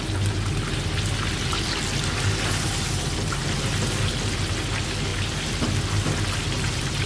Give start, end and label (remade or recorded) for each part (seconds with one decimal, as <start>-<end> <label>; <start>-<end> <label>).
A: 0.0-7.1 recorded